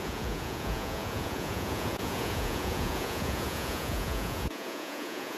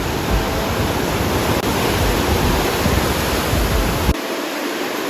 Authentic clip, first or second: second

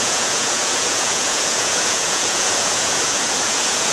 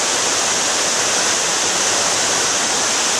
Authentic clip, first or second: second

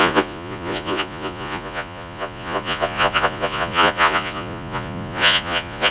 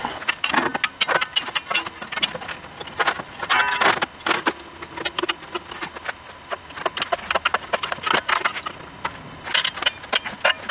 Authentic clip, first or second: second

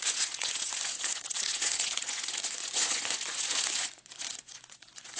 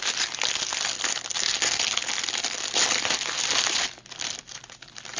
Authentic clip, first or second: second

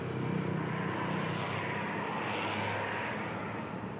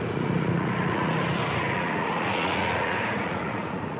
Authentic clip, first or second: first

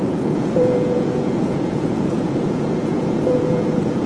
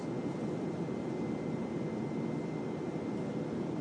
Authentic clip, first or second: second